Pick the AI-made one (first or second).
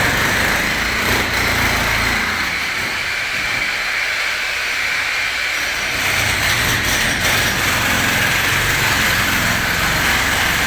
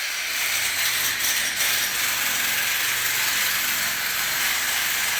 first